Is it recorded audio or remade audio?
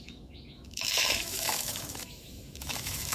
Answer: remade